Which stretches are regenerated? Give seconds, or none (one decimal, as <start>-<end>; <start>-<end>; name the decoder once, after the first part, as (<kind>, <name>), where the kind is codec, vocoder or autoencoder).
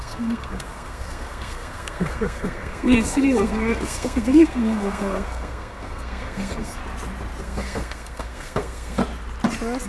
0.0-6.8 (codec, SNAC); 7.4-9.0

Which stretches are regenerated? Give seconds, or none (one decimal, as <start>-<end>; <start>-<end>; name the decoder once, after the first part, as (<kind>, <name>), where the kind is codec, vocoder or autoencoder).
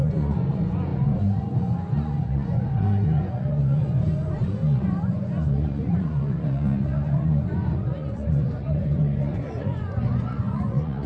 0.0-11.1 (vocoder, Vocos)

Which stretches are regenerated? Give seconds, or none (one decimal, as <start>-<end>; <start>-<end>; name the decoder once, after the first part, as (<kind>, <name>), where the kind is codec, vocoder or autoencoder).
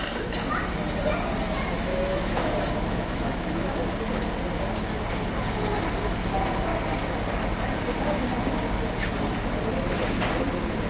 1.9-3.9 (autoencoder, DAC-VAE)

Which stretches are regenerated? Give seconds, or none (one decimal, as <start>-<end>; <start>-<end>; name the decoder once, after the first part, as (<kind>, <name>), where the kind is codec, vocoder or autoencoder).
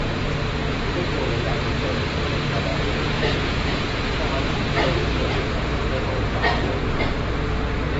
2.7-4.1 (vocoder, Vocos); 5.2-5.7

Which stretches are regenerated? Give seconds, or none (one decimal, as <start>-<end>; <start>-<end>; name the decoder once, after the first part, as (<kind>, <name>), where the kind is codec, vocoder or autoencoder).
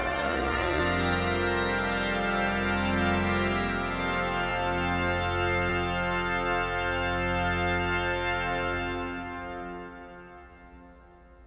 0.0-0.8 (vocoder, Vocos)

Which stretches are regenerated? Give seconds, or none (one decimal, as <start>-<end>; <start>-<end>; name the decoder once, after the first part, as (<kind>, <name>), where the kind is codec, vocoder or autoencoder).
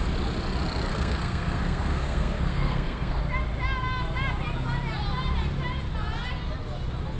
0.9-3.2 (codec, SNAC)